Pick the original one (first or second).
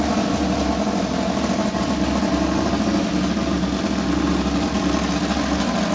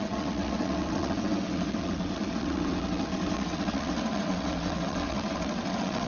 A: first